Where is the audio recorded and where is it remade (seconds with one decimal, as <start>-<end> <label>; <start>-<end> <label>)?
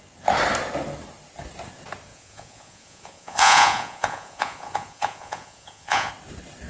0.0-2.1 recorded; 2.1-6.1 remade; 6.1-6.7 recorded